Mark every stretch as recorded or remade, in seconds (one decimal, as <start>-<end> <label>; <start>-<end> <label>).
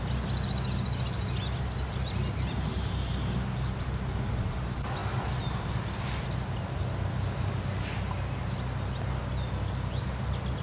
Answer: 0.0-10.6 recorded